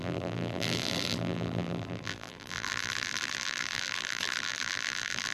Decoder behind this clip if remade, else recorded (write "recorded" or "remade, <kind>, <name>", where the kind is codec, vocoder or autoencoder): remade, vocoder, BigVGAN v2